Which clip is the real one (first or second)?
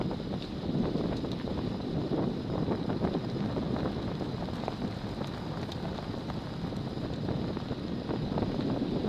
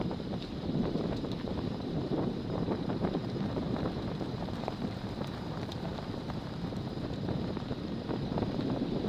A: first